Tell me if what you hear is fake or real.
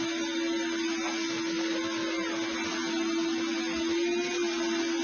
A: real